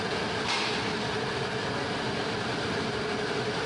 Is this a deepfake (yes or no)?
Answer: no